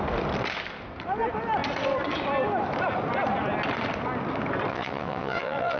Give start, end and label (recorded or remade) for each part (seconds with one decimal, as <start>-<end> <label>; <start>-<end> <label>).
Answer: 0.0-4.7 recorded; 4.7-5.8 remade